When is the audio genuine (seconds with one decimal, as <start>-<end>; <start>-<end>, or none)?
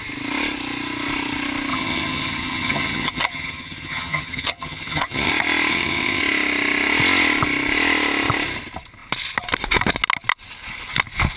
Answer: 0.0-1.7; 5.3-5.7; 6.2-11.4